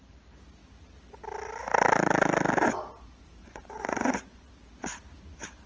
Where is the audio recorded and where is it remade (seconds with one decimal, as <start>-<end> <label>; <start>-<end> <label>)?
0.0-3.4 recorded; 3.4-4.5 remade; 4.5-5.7 recorded